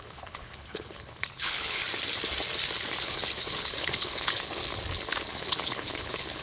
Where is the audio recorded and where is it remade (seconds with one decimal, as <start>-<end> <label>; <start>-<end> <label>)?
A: 0.0-1.8 remade; 1.8-3.0 recorded; 3.0-4.6 remade; 4.6-5.3 recorded; 5.3-6.4 remade